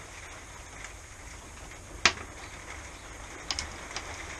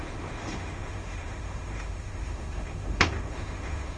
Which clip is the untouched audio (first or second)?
first